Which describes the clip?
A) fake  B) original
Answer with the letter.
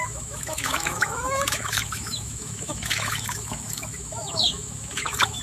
A